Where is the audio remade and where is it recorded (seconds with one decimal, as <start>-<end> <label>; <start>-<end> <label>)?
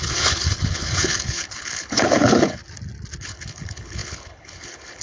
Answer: 0.0-2.6 remade; 2.6-3.2 recorded; 3.2-5.0 remade